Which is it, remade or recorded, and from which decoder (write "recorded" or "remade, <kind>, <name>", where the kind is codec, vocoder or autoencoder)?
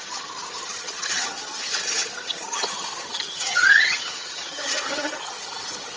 remade, vocoder, HiFi-GAN